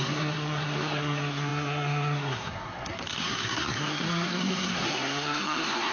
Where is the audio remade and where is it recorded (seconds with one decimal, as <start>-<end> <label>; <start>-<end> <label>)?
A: 0.0-5.9 remade